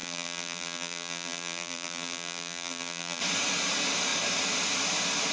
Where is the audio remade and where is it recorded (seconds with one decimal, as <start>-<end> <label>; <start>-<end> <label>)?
0.0-3.2 remade; 3.2-5.3 recorded